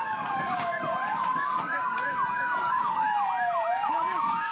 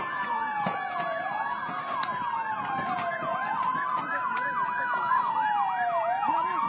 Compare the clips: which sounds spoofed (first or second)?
first